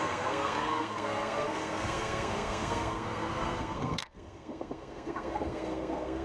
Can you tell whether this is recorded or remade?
remade